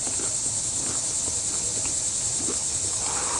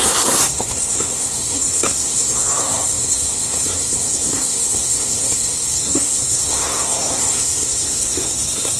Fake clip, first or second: second